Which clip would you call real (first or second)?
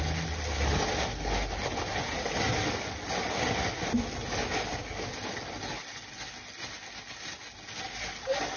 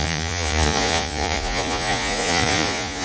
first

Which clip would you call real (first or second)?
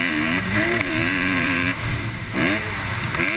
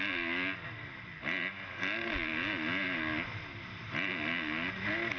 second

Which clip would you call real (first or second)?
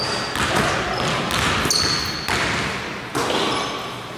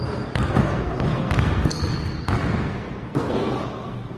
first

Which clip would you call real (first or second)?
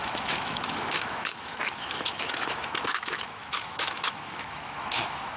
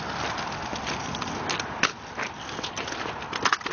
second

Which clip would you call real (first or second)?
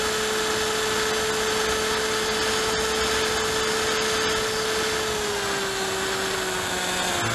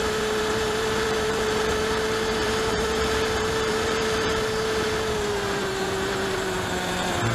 first